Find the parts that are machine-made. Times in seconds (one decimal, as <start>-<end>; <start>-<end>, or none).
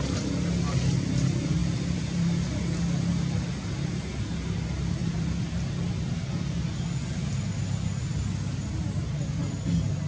1.6-2.8; 5.0-5.9; 8.0-8.7